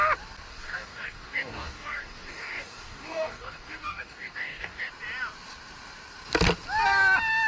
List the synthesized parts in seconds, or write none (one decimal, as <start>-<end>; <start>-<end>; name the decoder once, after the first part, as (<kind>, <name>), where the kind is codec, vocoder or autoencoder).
0.5-4.9 (codec, DAC)